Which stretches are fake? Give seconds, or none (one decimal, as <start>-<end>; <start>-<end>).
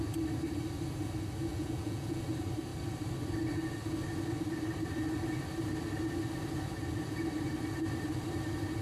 1.5-2.2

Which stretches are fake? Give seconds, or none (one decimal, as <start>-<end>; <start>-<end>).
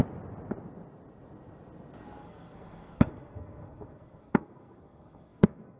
2.2-5.8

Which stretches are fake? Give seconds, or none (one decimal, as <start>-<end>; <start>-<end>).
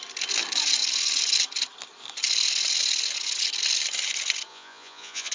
4.5-5.3